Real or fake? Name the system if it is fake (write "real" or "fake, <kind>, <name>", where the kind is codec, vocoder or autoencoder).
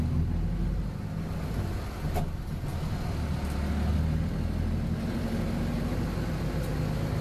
real